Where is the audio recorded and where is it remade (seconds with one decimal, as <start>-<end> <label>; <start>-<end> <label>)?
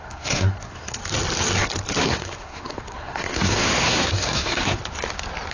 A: 0.0-1.0 remade; 1.0-2.0 recorded; 2.0-4.8 remade; 4.8-5.5 recorded